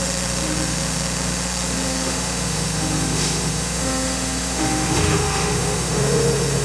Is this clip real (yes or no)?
no